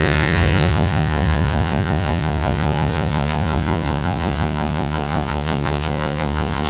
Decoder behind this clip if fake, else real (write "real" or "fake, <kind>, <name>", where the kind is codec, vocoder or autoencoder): fake, vocoder, Vocos